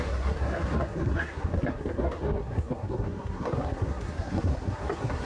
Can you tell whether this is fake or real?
fake